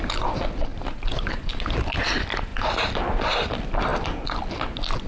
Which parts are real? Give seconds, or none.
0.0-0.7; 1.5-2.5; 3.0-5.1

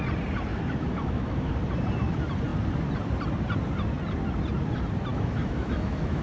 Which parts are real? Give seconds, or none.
0.0-0.5; 1.5-5.1

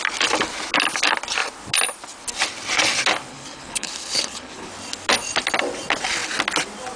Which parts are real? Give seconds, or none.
0.0-3.3; 4.7-7.0

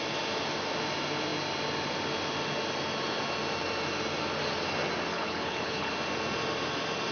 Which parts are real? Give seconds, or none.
0.0-5.1; 5.9-7.1